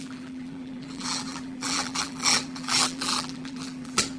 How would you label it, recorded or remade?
remade